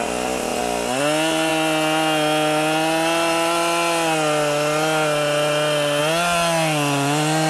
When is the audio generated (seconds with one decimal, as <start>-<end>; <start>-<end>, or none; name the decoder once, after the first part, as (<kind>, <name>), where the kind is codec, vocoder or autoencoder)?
none